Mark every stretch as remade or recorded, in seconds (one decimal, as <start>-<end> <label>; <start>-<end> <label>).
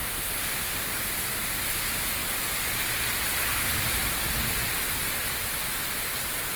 0.0-0.8 remade; 0.8-6.6 recorded